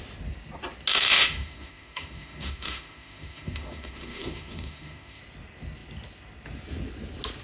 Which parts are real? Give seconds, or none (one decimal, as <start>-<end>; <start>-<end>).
0.0-0.9; 5.2-7.4